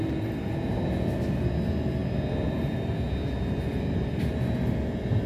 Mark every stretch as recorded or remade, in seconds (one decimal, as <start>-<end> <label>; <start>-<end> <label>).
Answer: 0.0-5.3 recorded